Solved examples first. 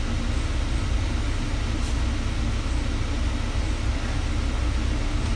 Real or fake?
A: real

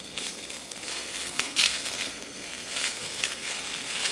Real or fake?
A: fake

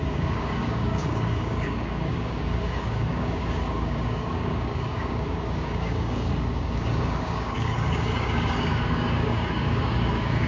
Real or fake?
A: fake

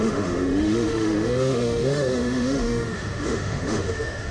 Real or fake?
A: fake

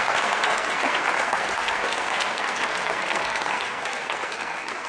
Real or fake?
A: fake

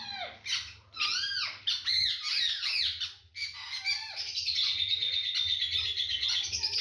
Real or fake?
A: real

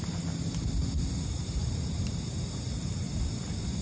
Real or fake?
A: real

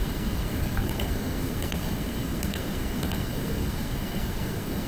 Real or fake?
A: fake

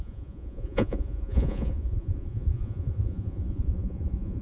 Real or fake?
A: fake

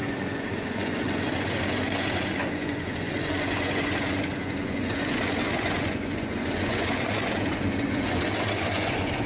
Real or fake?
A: fake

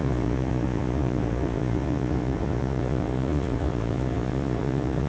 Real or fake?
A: fake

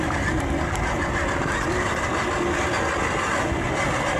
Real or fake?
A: real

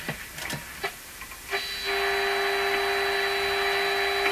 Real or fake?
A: real